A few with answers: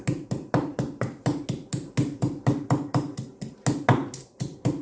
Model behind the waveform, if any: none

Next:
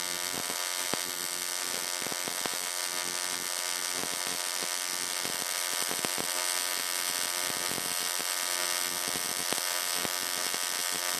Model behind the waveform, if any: none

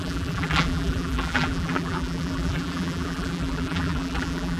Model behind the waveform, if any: vocoder, BigVGAN v2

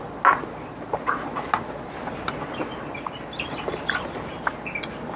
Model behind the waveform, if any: none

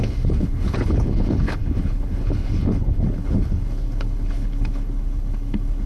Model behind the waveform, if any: codec, HILCodec